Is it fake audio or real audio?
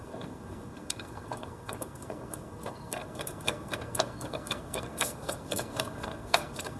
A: fake